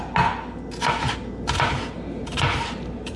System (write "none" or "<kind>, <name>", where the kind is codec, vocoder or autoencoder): none